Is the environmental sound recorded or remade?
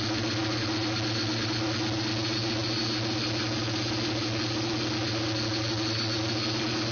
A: recorded